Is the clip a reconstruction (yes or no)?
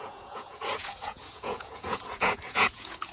yes